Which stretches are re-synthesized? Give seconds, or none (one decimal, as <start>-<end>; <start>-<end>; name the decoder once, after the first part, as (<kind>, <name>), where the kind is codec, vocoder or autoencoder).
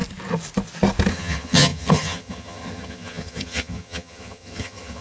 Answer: 1.1-5.0 (vocoder, HiFi-GAN)